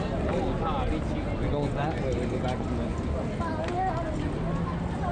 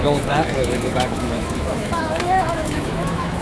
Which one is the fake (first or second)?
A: second